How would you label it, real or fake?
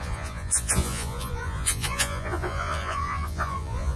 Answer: fake